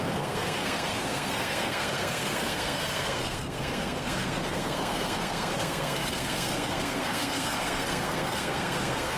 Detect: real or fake fake